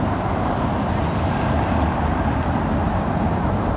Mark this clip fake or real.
real